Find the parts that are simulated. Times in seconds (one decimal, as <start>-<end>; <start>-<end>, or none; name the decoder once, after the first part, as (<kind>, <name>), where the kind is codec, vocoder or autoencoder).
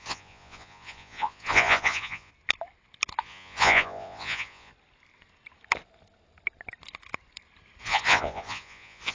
0.0-2.3 (vocoder, Vocos); 3.2-4.7; 7.8-9.1